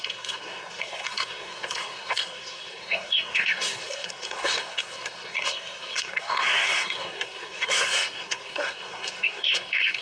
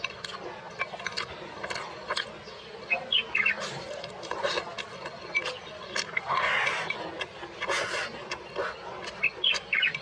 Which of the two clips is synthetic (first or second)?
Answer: first